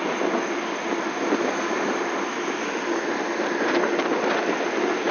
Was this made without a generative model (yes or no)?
yes